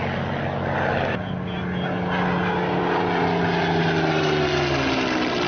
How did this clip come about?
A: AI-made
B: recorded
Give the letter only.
B